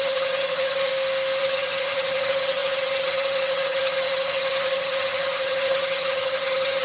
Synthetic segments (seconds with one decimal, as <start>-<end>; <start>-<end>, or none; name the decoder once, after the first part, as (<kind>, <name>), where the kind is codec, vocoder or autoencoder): 0.0-0.9 (vocoder, HiFi-GAN); 1.4-6.8